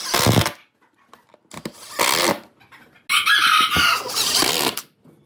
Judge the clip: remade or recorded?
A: recorded